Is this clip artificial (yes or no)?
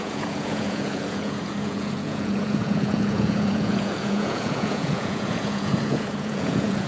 yes